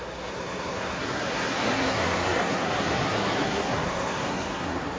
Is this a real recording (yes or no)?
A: no